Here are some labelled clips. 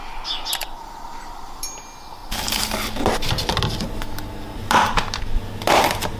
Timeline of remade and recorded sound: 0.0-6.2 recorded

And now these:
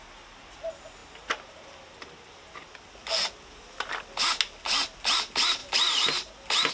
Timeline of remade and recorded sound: 0.0-5.6 recorded; 5.6-6.3 remade; 6.3-6.7 recorded